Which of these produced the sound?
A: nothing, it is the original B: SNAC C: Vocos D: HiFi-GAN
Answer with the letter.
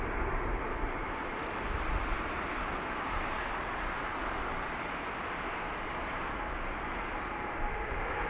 A